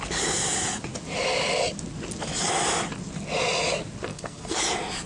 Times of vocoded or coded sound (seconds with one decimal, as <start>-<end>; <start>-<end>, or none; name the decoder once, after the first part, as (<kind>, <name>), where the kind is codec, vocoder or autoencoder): 4.1-4.6 (codec, SNAC)